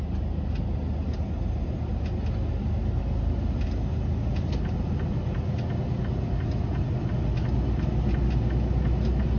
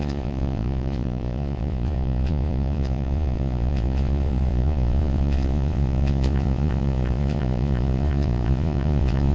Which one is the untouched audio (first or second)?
first